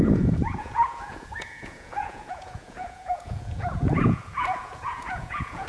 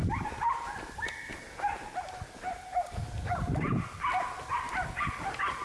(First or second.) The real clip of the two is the second